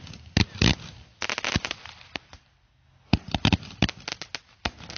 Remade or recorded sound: recorded